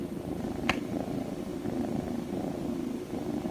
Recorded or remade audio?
remade